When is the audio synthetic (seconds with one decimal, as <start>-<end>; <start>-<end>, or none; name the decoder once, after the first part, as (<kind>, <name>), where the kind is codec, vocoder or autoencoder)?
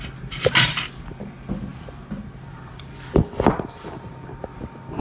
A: 1.7-4.1 (vocoder, BigVGAN v2)